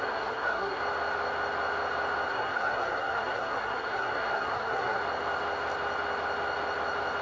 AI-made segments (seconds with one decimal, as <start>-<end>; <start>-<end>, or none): 0.0-0.8; 2.3-5.0